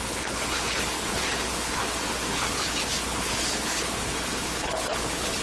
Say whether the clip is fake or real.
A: fake